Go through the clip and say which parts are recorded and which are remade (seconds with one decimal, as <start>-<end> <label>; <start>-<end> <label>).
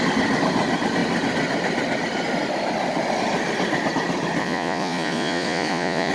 0.0-4.4 recorded; 4.4-6.1 remade